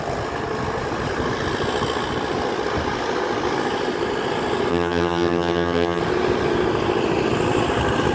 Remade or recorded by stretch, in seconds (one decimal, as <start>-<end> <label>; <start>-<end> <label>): 0.0-4.7 recorded; 4.7-6.0 remade; 6.0-8.1 recorded